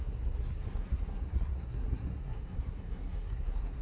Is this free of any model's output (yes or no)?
no